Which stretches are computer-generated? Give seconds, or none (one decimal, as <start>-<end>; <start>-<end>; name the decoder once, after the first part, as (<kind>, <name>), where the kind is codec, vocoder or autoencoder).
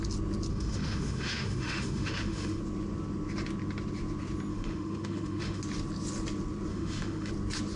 0.5-2.6 (autoencoder, DAC-VAE); 4.5-5.6; 6.7-7.3